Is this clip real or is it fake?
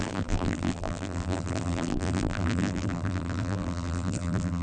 fake